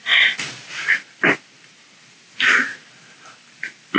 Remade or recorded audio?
recorded